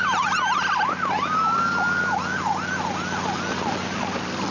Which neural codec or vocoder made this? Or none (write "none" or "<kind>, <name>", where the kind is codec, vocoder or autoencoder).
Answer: none